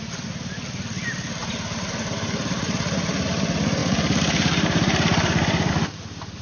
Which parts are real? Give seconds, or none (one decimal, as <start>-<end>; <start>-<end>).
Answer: 0.0-1.4; 3.1-3.8; 5.7-6.4